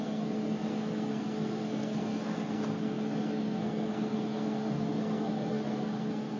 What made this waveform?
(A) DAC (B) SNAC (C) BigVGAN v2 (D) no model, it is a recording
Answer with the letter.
B